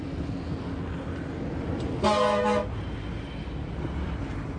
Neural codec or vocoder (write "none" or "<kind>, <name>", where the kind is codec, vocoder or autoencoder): none